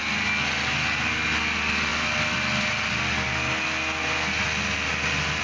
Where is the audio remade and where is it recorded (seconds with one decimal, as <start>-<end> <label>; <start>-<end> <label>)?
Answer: 0.0-5.4 recorded